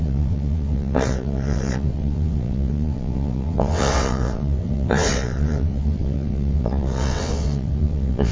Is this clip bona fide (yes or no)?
no